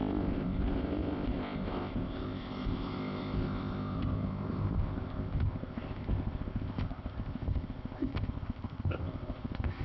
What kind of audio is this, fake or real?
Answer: fake